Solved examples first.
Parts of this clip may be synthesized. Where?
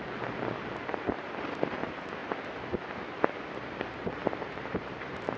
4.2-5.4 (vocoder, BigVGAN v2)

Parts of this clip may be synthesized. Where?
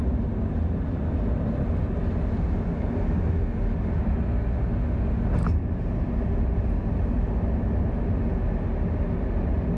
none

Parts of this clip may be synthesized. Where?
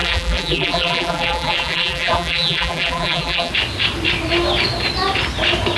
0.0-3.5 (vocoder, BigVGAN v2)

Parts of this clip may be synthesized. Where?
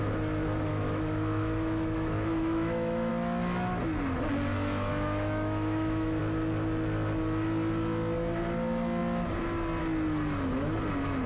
0.7-3.1 (autoencoder, DAC-VAE); 4.9-6.2